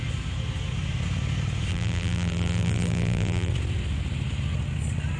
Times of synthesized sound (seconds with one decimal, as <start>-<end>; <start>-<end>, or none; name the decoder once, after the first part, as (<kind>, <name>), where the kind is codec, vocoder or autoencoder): 1.7-3.5 (vocoder, BigVGAN v2)